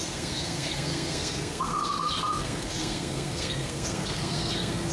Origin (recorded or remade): remade